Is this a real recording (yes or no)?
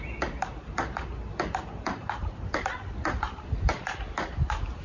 yes